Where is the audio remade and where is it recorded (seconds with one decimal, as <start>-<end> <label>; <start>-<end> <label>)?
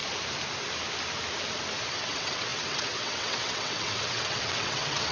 0.0-1.9 recorded; 1.9-5.1 remade